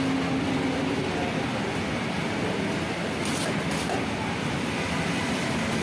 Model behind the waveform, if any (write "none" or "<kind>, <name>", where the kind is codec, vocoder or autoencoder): none